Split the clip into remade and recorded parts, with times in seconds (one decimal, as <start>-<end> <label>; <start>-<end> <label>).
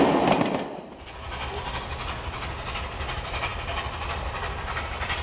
0.0-5.2 recorded